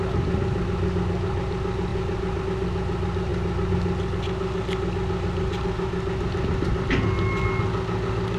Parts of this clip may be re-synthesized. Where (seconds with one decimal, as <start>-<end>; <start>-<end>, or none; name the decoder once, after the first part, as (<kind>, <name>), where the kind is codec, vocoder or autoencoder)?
none